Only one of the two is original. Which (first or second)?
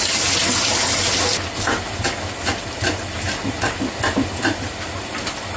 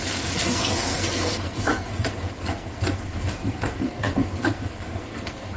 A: first